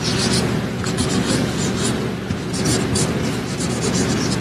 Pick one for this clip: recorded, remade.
remade